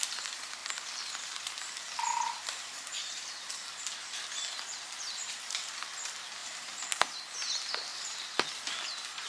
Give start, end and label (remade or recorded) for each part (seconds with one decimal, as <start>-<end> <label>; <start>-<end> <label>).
0.0-0.6 recorded; 0.6-3.8 remade; 3.8-5.2 recorded; 5.2-5.7 remade; 5.7-6.4 recorded; 6.4-7.1 remade; 7.1-9.3 recorded